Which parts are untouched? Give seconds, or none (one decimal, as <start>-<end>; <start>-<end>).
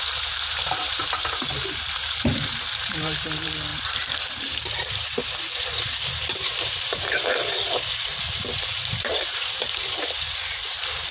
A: none